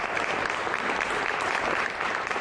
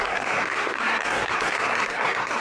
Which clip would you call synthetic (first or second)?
second